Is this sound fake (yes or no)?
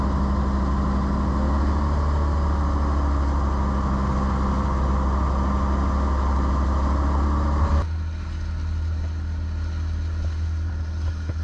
no